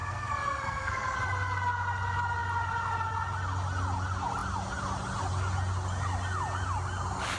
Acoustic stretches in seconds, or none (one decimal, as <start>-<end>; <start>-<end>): 1.2-7.4

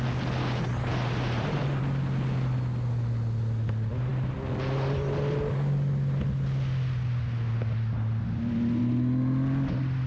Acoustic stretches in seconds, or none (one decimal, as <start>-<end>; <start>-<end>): 0.0-0.7; 1.8-10.1

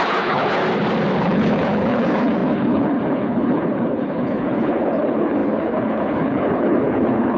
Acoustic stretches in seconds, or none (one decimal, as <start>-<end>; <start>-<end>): 0.6-1.2

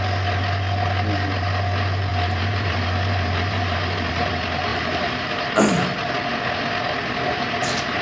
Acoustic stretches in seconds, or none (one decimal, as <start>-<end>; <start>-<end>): 0.0-2.1; 4.3-4.7; 5.4-8.0